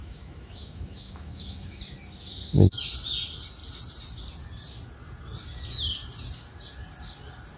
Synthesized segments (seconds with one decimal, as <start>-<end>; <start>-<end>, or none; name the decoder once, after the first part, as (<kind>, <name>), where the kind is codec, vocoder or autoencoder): 0.0-1.8 (autoencoder, DAC-VAE)